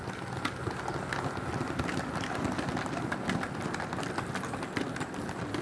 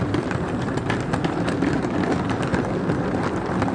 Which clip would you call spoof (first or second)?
second